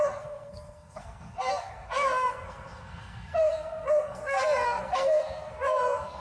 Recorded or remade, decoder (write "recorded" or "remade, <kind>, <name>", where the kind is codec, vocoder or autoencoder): remade, codec, SNAC